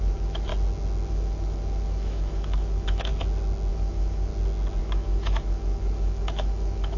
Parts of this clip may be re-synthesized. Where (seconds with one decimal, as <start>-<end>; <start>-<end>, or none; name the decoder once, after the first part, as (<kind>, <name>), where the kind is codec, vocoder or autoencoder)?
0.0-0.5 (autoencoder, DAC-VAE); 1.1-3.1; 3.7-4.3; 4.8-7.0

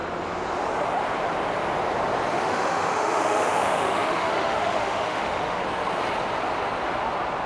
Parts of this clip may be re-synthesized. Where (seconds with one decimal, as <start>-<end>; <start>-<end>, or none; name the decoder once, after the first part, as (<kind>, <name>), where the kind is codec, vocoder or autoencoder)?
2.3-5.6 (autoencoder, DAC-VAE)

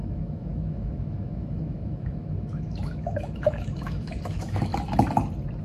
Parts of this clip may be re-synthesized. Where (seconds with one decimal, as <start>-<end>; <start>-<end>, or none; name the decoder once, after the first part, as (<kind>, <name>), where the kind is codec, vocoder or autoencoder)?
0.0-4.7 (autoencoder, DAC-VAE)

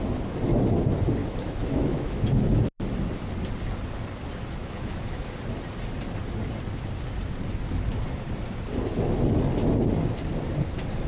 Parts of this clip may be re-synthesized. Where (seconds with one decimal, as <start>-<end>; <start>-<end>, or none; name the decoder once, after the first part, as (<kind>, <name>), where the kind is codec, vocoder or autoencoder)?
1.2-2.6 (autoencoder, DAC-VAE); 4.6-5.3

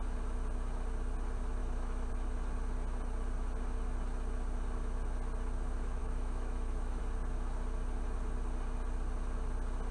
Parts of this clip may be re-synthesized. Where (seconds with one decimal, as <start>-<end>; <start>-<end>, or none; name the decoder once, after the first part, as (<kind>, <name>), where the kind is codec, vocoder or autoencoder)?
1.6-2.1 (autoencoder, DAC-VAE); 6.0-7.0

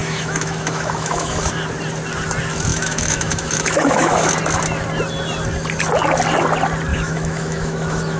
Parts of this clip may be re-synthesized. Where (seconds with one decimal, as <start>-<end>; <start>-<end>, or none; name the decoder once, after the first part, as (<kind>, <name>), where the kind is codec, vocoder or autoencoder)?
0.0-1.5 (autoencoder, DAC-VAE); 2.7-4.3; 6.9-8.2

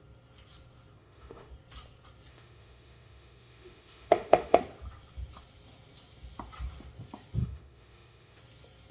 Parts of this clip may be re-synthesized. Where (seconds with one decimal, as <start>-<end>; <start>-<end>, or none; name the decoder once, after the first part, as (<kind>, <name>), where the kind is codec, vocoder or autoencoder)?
1.0-1.5 (autoencoder, DAC-VAE); 2.3-4.6; 7.4-8.4

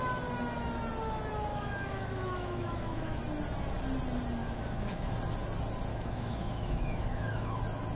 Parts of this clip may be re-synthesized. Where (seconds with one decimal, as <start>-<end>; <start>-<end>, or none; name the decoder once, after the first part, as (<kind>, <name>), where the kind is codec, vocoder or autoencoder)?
1.5-3.2 (autoencoder, DAC-VAE); 4.4-5.1; 5.9-7.6